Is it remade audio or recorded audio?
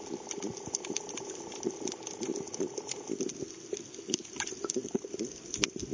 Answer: recorded